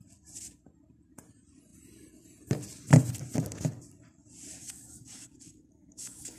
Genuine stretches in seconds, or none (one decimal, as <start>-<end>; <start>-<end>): 0.0-4.6

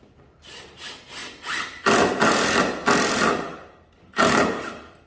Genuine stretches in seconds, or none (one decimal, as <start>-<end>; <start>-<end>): 0.0-5.1

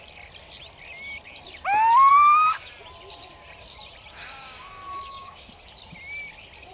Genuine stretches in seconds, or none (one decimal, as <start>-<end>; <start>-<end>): 0.0-2.1; 2.7-4.1; 5.5-6.7